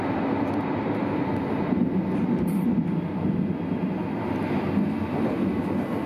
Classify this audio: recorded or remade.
recorded